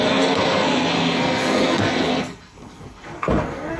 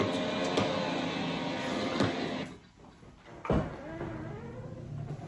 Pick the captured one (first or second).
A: second